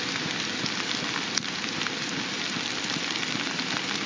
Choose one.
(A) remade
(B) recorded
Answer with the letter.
B